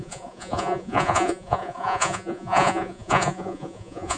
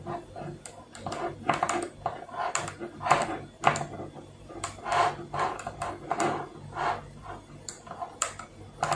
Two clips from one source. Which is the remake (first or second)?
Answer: first